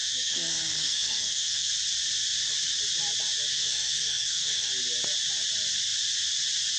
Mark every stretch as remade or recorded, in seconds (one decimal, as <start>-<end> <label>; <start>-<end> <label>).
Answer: 0.0-1.7 remade; 1.7-3.5 recorded; 3.5-4.7 remade; 4.7-6.8 recorded